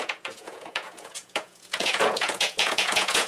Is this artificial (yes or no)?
yes